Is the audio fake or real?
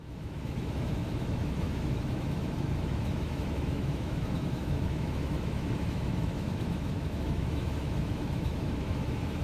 fake